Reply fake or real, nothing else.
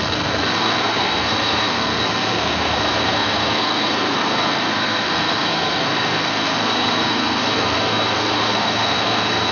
fake